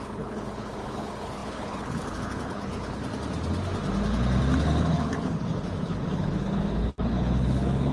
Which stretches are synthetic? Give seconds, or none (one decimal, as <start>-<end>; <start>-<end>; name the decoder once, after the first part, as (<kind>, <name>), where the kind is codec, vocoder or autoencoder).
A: 0.0-3.0 (codec, HILCodec); 4.8-7.9